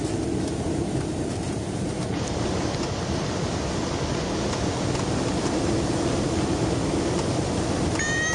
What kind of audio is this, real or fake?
fake